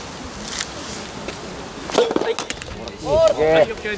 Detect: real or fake real